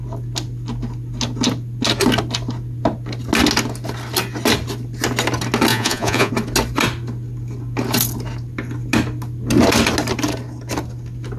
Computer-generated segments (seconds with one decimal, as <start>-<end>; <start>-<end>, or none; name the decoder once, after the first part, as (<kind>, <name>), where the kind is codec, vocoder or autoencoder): 5.7-6.3 (vocoder, Vocos)